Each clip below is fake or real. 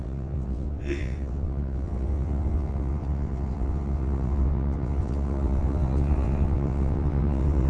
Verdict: fake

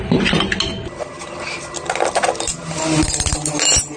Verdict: real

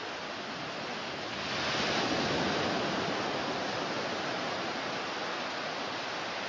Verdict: real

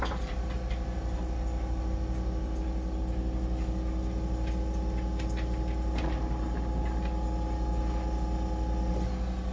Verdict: real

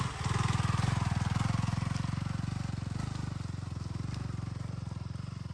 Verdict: real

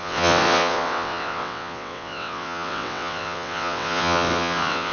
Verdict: fake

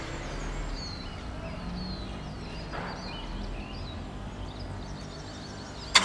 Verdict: real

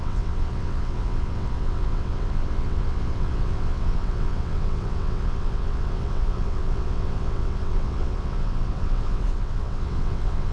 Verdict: fake